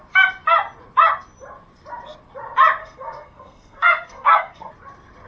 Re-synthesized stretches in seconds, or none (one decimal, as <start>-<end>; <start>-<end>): 2.8-4.7